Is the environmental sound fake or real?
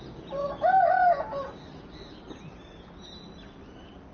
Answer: real